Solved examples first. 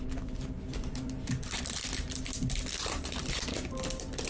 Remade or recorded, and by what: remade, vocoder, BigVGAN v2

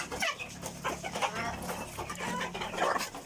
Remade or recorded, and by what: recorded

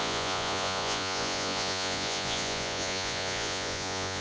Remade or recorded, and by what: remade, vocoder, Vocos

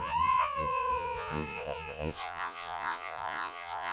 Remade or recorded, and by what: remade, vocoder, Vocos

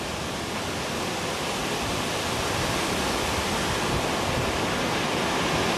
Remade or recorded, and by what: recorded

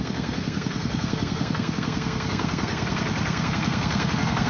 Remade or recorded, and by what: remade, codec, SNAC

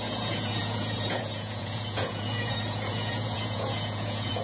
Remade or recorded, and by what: remade, vocoder, Vocos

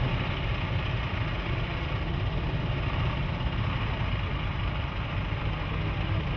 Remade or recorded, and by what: recorded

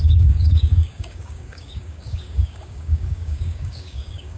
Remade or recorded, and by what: remade, codec, DAC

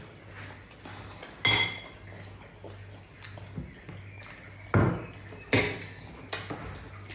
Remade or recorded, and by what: recorded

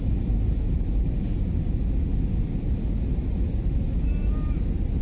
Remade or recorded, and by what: recorded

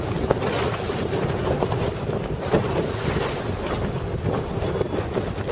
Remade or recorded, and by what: recorded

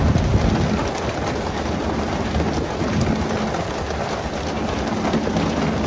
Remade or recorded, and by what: recorded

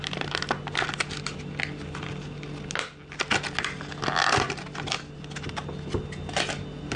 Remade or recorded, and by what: recorded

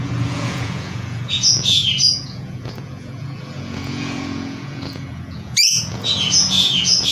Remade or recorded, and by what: remade, vocoder, Vocos